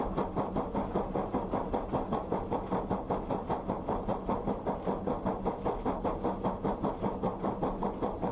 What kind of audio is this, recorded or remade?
recorded